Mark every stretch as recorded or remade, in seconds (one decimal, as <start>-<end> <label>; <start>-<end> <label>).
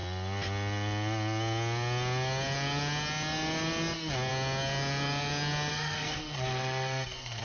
0.0-5.7 recorded; 5.7-7.4 remade